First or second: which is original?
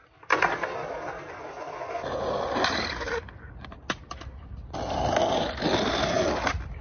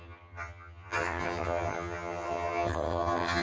first